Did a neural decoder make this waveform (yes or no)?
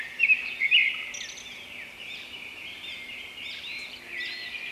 no